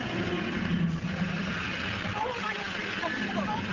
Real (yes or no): yes